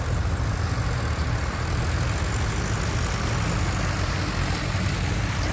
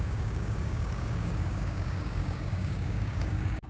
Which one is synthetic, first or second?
second